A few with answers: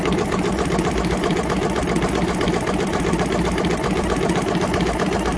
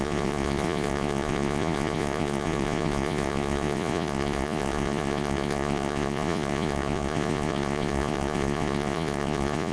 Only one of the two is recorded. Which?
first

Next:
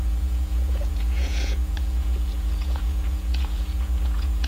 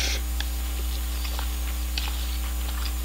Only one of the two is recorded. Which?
second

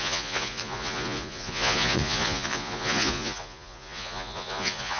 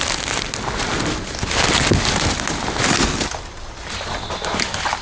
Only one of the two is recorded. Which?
second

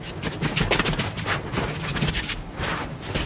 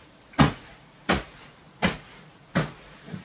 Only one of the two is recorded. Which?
first